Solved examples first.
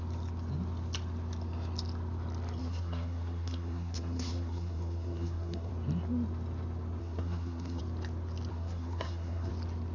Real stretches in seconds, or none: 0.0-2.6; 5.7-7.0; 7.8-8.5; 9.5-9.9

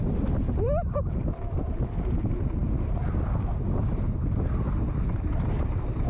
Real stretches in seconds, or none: 0.0-6.1

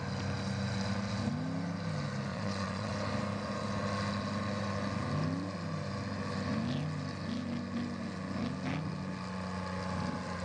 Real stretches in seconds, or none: 0.0-2.3; 2.9-10.4

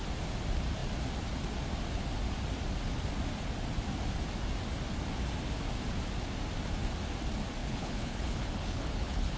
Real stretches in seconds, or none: 0.0-7.6

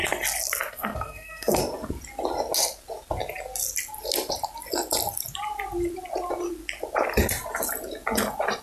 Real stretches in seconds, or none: 0.0-0.7; 1.6-8.6

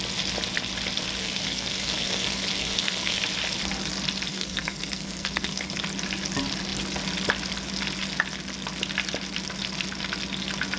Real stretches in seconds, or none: 0.0-1.2; 3.2-4.3; 5.8-10.8

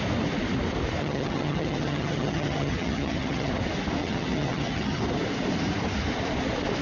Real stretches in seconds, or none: 0.0-1.0; 3.5-4.0; 5.0-6.8